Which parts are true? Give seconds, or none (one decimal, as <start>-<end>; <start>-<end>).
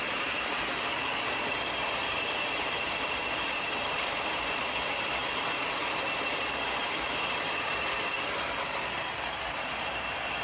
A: 5.2-6.8